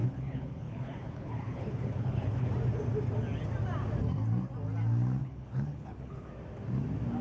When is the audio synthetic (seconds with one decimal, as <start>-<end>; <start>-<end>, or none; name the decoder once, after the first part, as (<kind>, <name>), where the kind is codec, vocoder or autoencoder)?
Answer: 0.0-2.5 (codec, HILCodec); 5.2-6.3